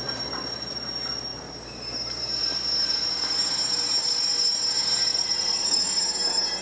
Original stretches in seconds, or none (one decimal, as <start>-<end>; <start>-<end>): 0.0-5.1; 6.0-6.6